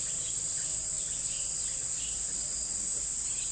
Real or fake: real